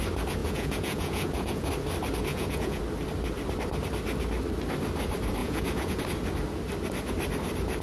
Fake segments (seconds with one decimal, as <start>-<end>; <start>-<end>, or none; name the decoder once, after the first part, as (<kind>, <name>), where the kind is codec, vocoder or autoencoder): 0.4-1.7 (vocoder, Vocos); 2.3-2.8; 5.4-6.0